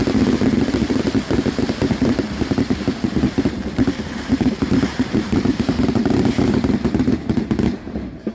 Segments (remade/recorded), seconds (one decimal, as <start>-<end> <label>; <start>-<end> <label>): 0.0-1.4 recorded; 1.4-8.3 remade